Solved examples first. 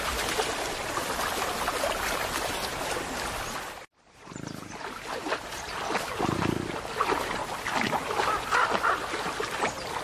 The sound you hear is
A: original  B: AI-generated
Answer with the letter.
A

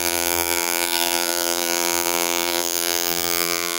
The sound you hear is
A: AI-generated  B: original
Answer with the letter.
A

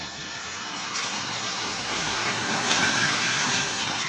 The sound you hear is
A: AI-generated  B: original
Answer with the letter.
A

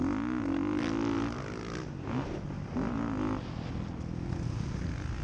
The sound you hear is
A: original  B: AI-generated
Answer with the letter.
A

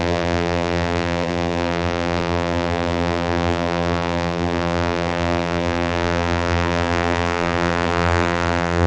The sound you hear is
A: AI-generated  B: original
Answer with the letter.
A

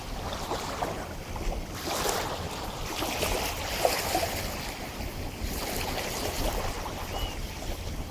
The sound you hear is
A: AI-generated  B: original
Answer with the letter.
B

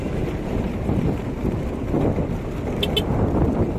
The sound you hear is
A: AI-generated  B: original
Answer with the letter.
B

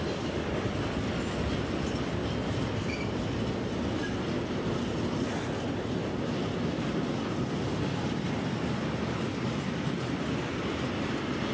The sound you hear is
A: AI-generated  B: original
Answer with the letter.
B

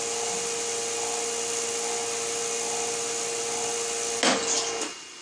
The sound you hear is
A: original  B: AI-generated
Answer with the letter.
A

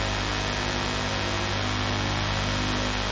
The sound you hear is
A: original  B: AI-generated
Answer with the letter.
A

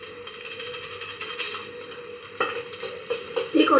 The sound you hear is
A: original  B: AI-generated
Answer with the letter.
A